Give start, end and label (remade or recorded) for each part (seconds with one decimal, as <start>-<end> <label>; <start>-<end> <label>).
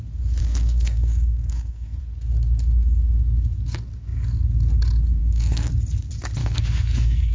0.0-0.4 recorded; 0.4-2.0 remade; 2.0-5.2 recorded; 5.2-5.7 remade; 5.7-6.4 recorded; 6.4-7.3 remade